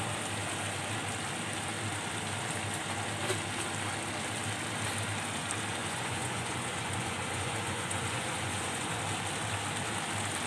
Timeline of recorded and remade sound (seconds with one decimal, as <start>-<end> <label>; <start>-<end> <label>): 0.0-5.8 recorded; 5.8-9.0 remade; 9.0-10.5 recorded